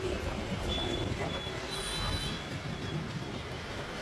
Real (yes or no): yes